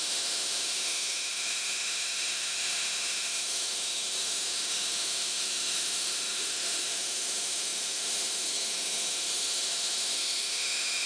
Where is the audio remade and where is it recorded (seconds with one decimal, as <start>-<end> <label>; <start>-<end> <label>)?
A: 0.0-11.1 remade